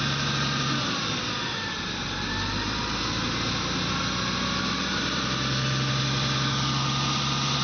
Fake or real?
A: real